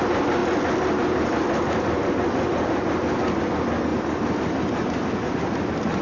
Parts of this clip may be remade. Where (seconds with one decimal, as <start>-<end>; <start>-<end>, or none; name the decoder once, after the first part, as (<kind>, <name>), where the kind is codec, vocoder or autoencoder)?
none